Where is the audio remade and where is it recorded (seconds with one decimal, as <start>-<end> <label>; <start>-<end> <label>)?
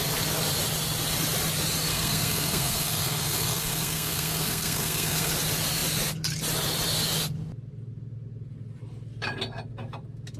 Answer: 0.0-1.9 recorded; 1.9-5.3 remade; 5.3-10.4 recorded